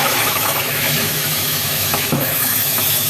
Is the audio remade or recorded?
remade